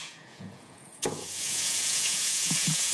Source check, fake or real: fake